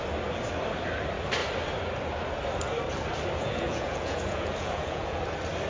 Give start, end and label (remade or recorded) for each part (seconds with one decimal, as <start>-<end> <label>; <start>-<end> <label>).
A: 0.0-3.4 recorded; 3.4-5.2 remade; 5.2-5.7 recorded